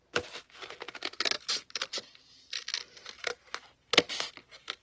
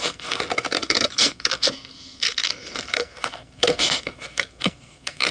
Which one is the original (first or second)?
first